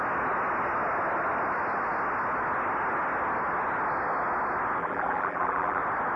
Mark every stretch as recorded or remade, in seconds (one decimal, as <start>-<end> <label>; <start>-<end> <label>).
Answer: 0.0-4.8 recorded; 4.8-5.8 remade; 5.8-6.2 recorded